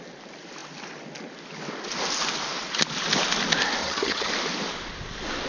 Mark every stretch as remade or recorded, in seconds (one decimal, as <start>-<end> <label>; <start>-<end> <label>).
0.0-3.8 recorded; 3.8-4.3 remade; 4.3-5.5 recorded